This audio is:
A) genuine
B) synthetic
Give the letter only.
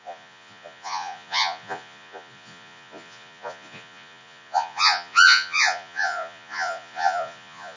B